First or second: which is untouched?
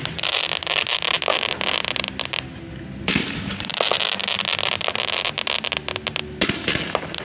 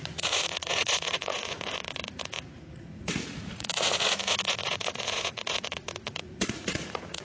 first